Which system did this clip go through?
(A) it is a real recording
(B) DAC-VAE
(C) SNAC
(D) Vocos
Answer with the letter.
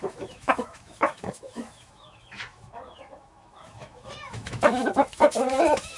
B